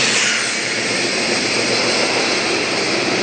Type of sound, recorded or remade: recorded